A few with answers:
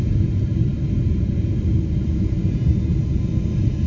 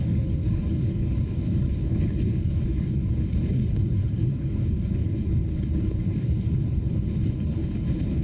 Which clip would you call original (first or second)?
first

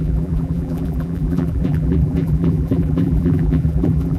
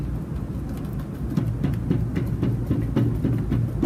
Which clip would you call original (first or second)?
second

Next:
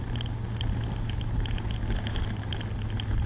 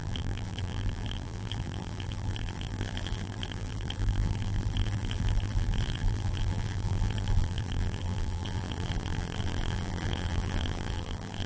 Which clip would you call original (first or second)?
first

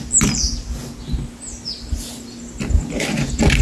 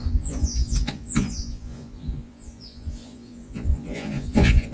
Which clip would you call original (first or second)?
first